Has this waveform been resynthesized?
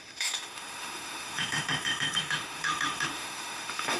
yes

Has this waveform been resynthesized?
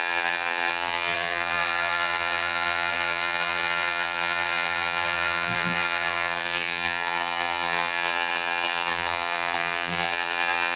yes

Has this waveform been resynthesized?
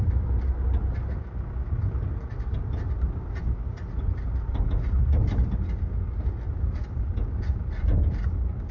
no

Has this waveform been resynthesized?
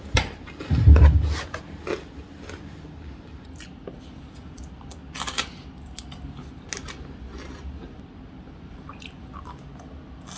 no